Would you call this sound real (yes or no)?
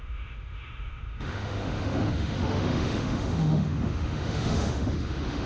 no